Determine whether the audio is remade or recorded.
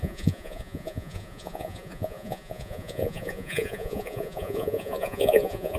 remade